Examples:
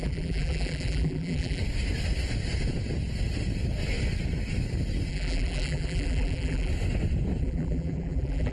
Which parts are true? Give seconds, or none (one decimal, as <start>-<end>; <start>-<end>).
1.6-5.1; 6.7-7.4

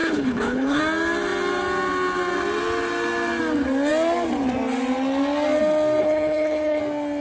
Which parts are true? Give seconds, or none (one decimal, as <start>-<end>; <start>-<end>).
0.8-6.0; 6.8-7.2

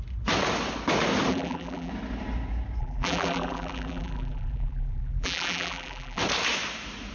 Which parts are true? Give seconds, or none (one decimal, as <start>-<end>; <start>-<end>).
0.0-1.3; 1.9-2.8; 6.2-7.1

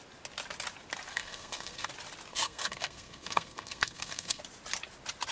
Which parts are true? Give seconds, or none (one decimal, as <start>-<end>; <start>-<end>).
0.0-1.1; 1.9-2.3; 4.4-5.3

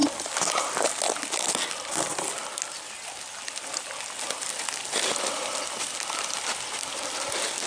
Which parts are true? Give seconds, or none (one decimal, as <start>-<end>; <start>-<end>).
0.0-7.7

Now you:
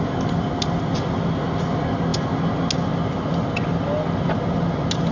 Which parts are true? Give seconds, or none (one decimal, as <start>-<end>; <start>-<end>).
0.0-5.1

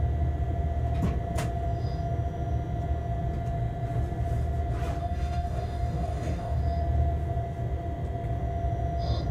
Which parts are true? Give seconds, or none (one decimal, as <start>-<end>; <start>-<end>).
0.0-5.0; 6.6-9.3

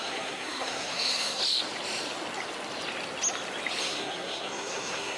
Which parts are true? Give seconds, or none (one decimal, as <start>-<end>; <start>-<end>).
1.4-3.8